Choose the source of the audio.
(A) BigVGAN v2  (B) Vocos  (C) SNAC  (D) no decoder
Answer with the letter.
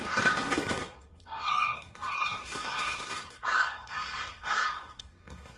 C